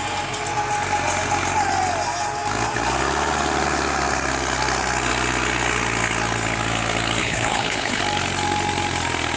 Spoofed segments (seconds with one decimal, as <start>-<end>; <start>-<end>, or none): 7.2-8.0

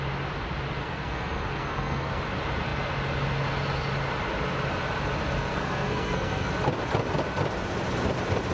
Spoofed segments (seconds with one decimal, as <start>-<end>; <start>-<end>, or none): 0.8-2.2; 5.5-6.5

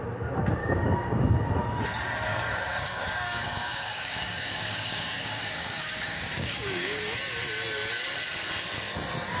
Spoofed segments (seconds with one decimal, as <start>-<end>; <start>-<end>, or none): 0.6-1.5; 2.3-7.0

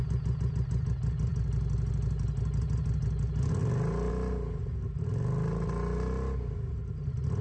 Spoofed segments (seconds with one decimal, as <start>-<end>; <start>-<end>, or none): none